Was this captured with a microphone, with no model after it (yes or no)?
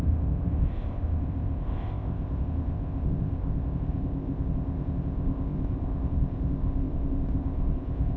no